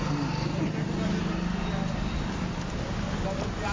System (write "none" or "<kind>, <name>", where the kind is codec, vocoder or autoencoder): none